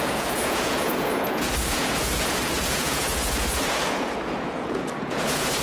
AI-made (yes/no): yes